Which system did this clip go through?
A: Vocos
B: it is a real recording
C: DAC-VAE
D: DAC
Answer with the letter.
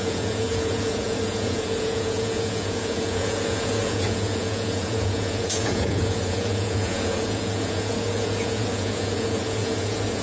A